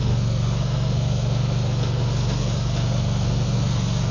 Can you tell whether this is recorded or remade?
remade